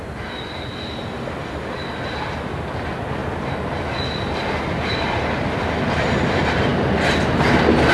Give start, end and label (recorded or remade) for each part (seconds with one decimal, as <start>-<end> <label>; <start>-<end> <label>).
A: 0.0-7.9 recorded